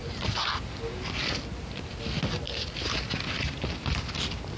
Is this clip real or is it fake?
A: real